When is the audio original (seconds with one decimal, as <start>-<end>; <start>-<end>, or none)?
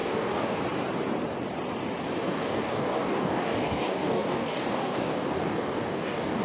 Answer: 0.6-2.3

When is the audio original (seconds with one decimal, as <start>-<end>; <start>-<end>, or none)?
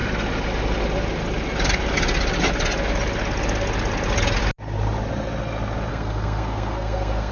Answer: 0.0-5.9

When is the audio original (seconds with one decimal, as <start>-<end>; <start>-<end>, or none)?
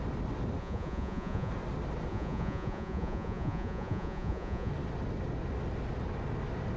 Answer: 0.0-0.6; 1.5-2.1; 4.7-6.8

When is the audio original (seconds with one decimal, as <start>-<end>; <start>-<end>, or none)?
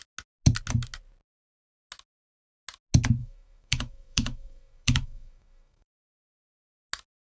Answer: 0.0-3.2; 6.5-7.2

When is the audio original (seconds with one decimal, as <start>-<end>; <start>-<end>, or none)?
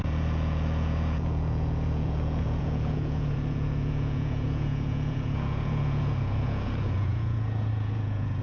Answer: none